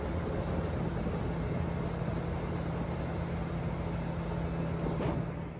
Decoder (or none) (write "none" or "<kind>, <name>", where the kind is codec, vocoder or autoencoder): none